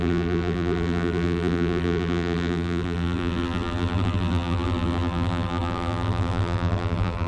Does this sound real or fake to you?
fake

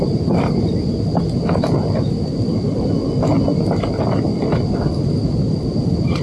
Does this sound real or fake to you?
real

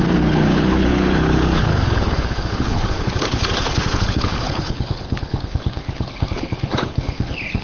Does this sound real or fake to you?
fake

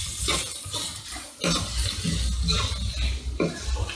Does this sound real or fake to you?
real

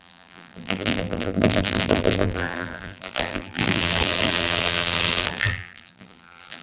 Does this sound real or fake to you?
fake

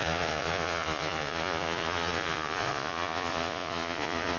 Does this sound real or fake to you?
fake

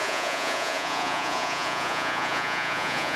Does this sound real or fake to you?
fake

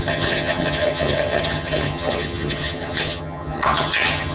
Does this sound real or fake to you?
fake